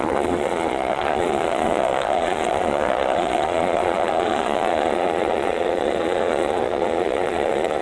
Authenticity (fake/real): fake